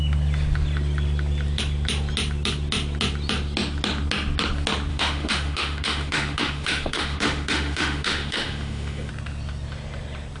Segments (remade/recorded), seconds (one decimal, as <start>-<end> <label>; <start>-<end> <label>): 0.0-4.9 recorded; 4.9-9.1 remade; 9.1-10.4 recorded